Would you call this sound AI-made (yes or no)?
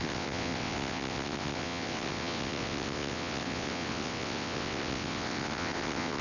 yes